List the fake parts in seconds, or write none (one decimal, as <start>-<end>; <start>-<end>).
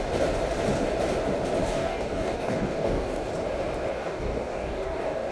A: 1.6-3.3; 3.9-5.3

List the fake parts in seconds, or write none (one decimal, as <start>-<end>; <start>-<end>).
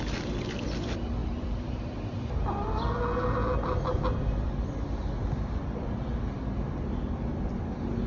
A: 1.2-2.8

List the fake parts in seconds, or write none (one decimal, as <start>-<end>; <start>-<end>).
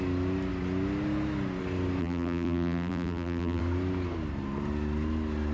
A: 2.0-3.6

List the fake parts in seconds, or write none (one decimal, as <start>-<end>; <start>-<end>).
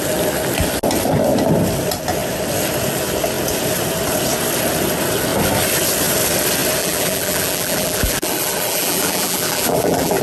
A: 6.8-10.2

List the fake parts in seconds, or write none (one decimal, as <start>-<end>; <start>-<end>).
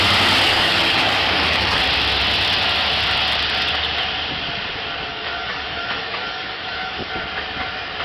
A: 0.5-1.8; 5.1-7.1